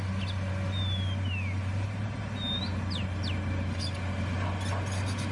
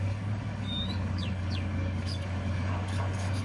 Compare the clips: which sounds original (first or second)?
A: first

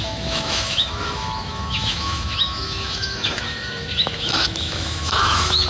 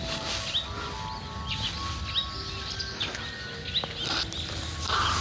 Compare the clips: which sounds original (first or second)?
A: second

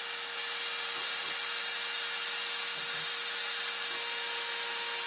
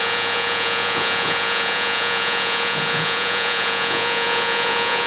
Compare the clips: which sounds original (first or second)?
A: first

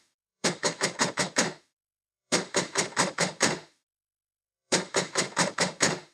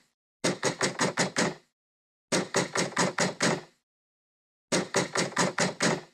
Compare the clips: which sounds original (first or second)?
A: second